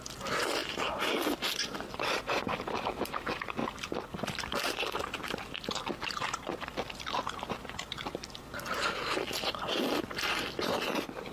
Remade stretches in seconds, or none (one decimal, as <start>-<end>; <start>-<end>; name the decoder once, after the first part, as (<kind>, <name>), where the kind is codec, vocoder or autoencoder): 0.6-2.1 (vocoder, BigVGAN v2); 3.6-5.4; 6.5-8.4